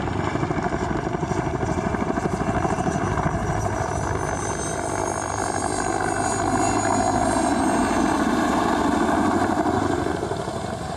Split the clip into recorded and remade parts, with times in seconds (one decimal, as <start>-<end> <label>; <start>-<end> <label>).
0.0-1.2 recorded; 1.2-3.9 remade; 3.9-11.0 recorded